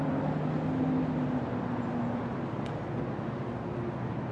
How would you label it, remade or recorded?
recorded